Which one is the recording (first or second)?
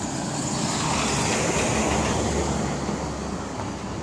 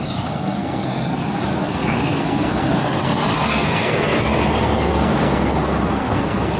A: first